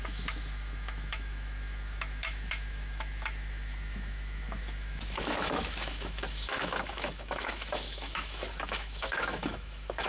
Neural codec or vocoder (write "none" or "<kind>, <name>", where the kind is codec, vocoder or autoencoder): autoencoder, DAC-VAE